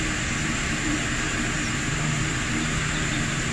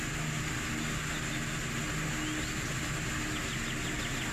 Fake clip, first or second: first